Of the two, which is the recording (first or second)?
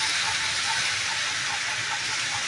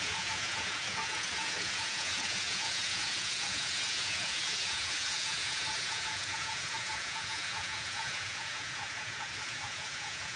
first